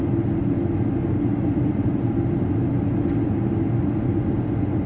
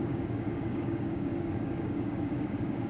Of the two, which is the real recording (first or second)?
first